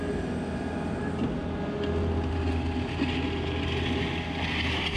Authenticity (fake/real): real